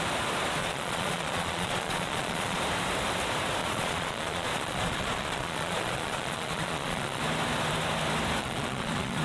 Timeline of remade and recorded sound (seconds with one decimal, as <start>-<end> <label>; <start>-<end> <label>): 0.0-0.6 recorded; 0.6-2.6 remade; 2.6-3.6 recorded; 3.6-7.2 remade; 7.2-8.4 recorded; 8.4-9.2 remade